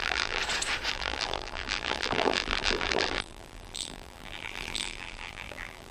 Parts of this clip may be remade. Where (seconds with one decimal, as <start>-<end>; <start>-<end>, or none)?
0.0-0.4; 0.9-5.9